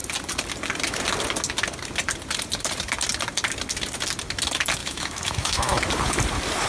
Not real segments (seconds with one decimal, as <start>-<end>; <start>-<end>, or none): 4.8-5.8